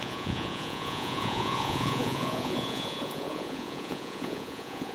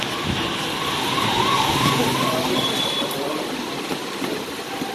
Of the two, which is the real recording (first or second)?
second